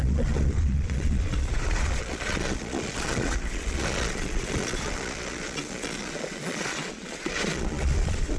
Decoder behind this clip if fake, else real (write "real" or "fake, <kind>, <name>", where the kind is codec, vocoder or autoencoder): fake, vocoder, Vocos